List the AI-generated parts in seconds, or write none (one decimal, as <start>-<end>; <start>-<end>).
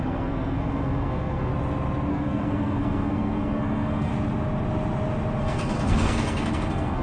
0.0-1.5; 2.1-4.1; 5.4-7.0